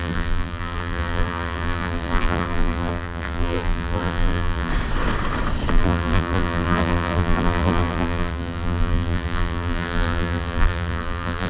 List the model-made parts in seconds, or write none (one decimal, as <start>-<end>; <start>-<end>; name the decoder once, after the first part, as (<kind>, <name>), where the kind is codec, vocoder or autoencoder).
0.0-4.7 (vocoder, BigVGAN v2); 5.7-11.5